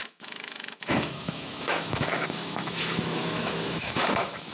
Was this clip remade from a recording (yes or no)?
yes